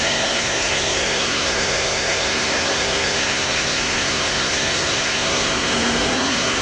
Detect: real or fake fake